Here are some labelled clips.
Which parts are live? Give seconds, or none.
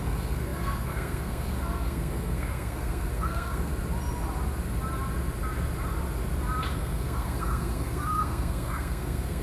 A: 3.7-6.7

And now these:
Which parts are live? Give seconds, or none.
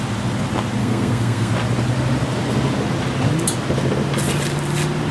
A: 0.0-0.8; 1.5-5.1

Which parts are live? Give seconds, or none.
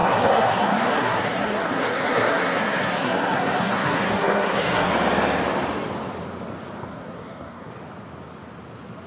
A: 4.9-6.9; 7.7-9.1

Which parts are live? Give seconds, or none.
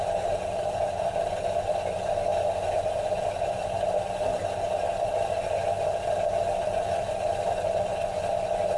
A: 0.0-8.8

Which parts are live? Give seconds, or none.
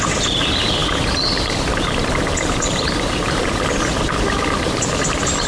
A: 0.0-5.5